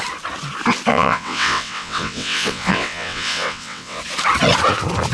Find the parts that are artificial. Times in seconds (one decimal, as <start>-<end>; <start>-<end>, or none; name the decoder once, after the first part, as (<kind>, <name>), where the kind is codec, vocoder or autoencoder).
0.9-4.0 (vocoder, WaveNeXt)